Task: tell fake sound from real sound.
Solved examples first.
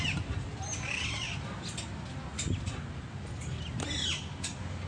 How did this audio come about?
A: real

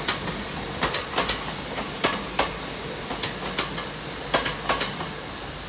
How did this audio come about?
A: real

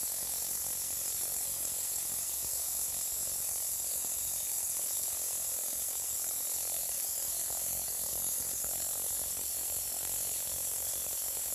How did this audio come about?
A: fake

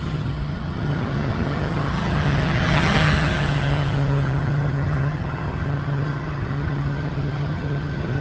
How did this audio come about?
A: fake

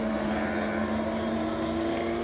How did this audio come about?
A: real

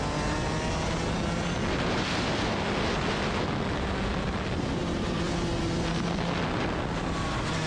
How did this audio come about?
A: real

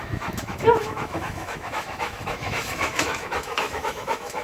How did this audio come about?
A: fake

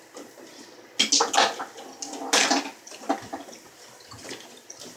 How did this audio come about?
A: real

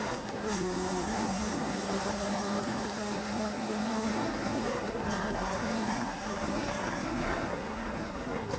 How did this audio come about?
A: fake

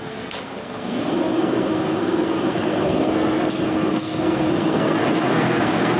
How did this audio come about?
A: fake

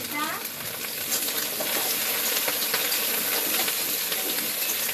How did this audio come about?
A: real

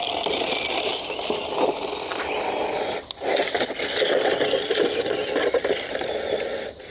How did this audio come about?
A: real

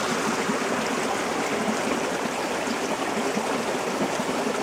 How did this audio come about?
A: real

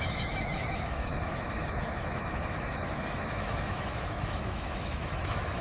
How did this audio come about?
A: fake